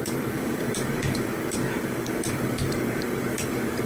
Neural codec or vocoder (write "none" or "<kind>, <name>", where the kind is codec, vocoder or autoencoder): codec, DAC